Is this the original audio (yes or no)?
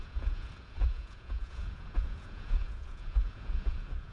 no